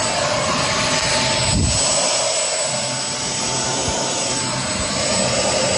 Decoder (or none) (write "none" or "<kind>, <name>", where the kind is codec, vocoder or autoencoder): none